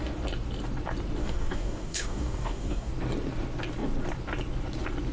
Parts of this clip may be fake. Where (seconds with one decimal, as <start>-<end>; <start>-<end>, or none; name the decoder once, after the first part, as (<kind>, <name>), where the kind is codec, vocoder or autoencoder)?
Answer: 1.2-2.9 (codec, DAC)